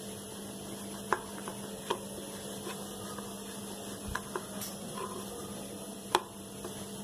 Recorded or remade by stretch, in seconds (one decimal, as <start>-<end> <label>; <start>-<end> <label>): 0.0-7.0 recorded